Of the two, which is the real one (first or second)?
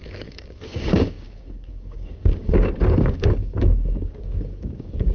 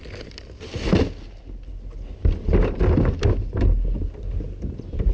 second